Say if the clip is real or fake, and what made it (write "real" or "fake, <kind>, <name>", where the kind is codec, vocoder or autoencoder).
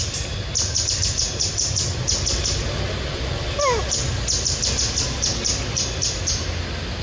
real